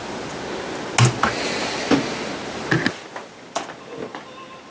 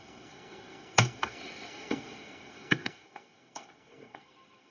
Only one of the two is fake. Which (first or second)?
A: second